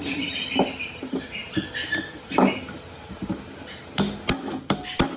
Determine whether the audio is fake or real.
real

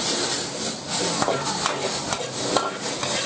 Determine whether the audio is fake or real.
real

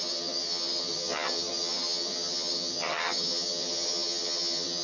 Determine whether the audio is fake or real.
fake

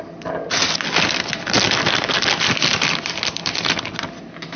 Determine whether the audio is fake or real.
real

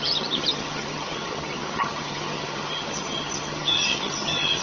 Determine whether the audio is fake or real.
fake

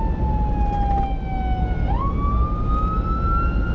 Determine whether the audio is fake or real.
real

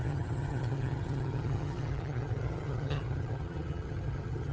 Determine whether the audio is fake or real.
fake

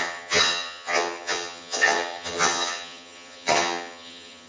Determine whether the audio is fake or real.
fake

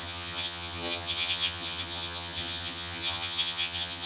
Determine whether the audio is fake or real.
fake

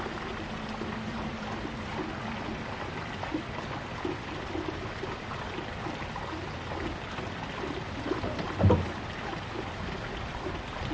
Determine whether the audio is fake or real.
real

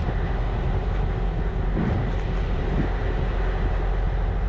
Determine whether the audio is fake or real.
real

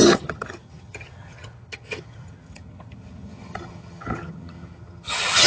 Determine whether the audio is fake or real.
fake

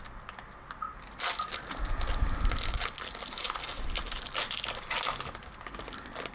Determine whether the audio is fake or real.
real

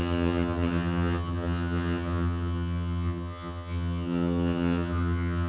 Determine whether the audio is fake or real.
fake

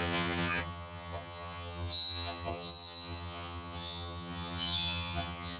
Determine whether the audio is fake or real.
fake